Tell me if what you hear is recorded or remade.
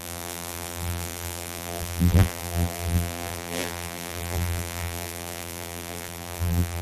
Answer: remade